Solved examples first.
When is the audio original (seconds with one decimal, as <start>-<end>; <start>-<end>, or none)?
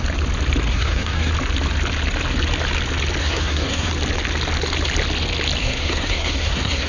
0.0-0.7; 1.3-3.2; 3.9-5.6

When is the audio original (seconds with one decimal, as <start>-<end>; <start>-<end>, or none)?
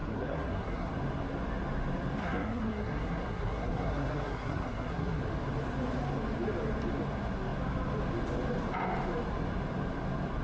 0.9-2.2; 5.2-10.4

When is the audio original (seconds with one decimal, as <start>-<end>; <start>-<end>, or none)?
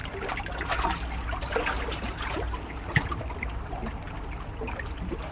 0.0-5.3